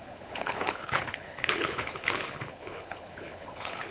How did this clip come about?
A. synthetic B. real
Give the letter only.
A